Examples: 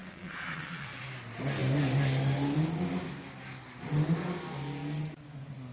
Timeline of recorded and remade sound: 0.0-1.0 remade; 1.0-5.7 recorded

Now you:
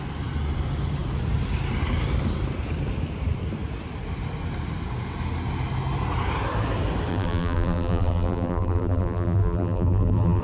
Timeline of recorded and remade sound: 0.0-7.1 recorded; 7.1-10.4 remade